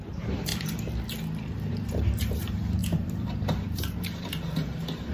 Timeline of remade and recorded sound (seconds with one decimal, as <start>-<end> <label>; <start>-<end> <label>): 0.0-0.5 remade; 0.5-1.7 recorded; 1.7-5.1 remade

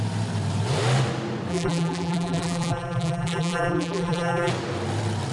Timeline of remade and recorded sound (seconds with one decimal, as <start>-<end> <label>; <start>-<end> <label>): 0.0-1.5 recorded; 1.5-4.5 remade; 4.5-5.3 recorded

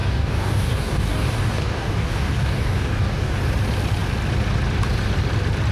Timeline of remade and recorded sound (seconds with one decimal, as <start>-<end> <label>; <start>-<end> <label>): 0.0-3.4 remade; 3.4-5.7 recorded

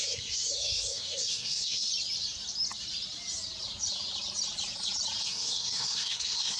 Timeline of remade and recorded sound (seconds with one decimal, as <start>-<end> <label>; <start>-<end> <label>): 0.0-1.9 remade; 1.9-5.2 recorded; 5.2-6.6 remade

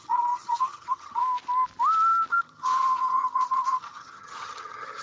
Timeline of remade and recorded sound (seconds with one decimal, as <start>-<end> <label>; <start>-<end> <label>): 0.0-1.2 remade; 1.2-2.3 recorded; 2.3-5.0 remade

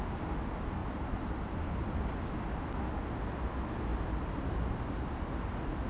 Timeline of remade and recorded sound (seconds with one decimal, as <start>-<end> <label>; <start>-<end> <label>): 0.0-0.8 recorded; 0.8-2.3 remade; 2.3-5.9 recorded

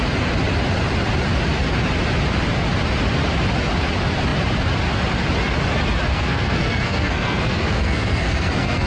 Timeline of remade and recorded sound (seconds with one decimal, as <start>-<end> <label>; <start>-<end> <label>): 0.0-6.1 recorded; 6.1-8.9 remade

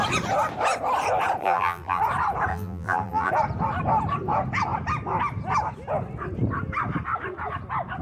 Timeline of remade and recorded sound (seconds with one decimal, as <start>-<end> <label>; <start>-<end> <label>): 0.0-1.4 recorded; 1.4-2.0 remade; 2.0-2.5 recorded; 2.5-3.3 remade; 3.3-8.0 recorded